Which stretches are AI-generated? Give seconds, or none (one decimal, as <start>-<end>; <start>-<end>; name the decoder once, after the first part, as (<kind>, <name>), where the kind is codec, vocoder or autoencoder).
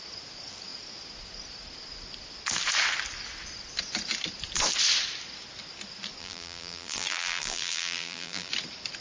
6.2-8.5 (vocoder, BigVGAN v2)